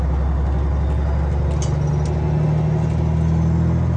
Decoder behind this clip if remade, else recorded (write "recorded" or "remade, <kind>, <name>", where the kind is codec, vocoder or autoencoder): recorded